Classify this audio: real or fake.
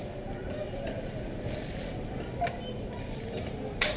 fake